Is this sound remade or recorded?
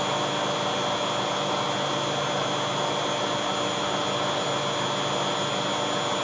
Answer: recorded